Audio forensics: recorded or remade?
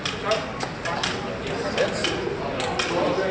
recorded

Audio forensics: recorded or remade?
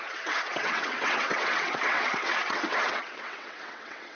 remade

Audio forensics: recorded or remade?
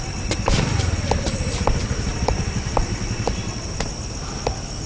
recorded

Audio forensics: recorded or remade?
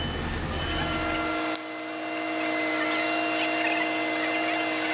recorded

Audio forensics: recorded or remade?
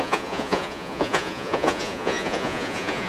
remade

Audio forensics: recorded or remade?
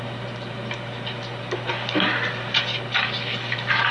recorded